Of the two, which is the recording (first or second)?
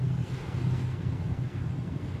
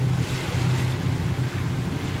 second